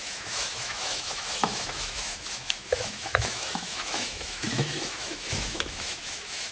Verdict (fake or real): fake